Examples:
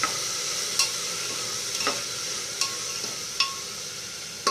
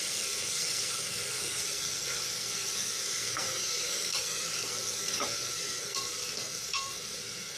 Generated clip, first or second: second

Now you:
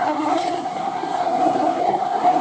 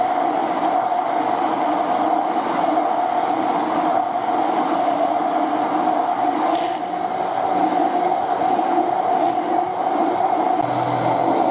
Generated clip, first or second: first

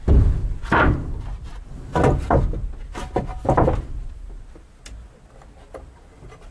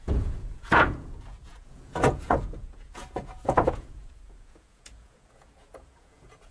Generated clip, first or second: second